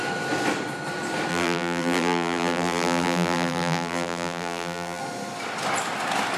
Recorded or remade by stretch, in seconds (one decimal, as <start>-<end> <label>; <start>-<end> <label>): 0.0-1.3 recorded; 1.3-5.0 remade; 5.0-6.4 recorded